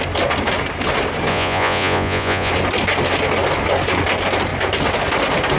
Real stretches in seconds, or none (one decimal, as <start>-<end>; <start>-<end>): 0.0-1.3; 2.5-5.6